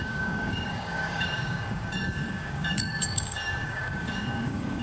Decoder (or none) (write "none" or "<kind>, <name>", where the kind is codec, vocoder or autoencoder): codec, DAC